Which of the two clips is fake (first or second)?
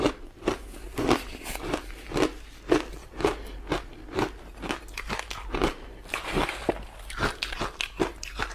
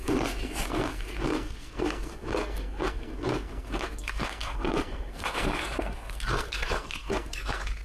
second